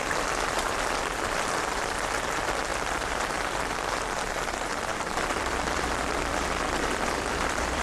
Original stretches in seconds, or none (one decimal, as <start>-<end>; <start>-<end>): 2.7-3.6